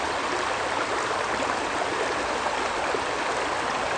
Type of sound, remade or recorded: recorded